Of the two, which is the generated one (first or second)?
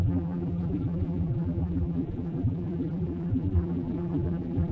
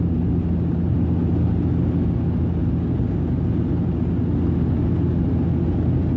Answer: first